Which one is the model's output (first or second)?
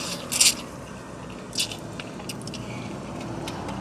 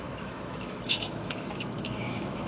second